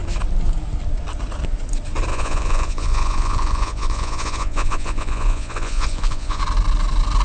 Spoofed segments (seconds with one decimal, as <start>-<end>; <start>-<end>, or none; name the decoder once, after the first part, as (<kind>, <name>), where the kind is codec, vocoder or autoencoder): 2.1-6.4 (vocoder, Vocos)

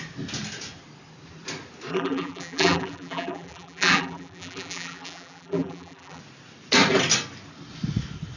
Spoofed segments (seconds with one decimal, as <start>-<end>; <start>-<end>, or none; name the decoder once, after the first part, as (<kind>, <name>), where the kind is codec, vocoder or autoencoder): 1.9-6.2 (vocoder, BigVGAN v2)